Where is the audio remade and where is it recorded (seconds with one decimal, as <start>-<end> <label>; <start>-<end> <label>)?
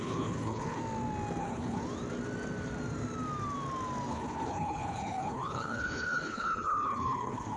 0.0-0.8 remade; 0.8-1.4 recorded; 1.4-1.8 remade; 1.8-4.1 recorded; 4.1-7.6 remade